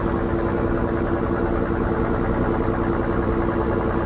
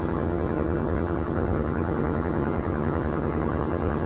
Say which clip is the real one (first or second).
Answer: first